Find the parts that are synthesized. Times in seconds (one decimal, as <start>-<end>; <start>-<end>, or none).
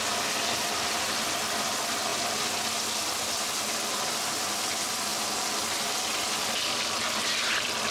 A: none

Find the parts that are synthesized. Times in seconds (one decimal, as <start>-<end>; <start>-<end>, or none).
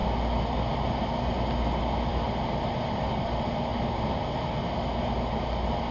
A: none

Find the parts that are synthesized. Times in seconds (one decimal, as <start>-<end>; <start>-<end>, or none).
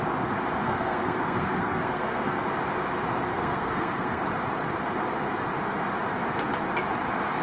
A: 0.6-2.4; 3.3-4.2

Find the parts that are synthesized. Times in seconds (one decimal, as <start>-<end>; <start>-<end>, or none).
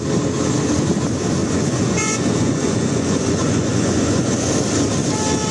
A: 1.4-4.5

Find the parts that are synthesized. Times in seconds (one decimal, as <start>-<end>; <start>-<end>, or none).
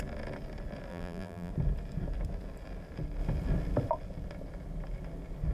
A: 0.9-1.5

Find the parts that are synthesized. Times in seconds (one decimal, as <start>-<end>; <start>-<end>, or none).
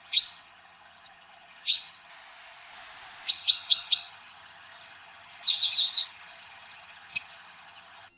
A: 0.0-2.1; 3.3-8.2